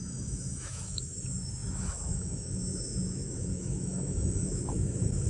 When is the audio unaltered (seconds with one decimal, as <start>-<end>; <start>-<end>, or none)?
none